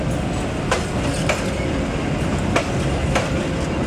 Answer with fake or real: real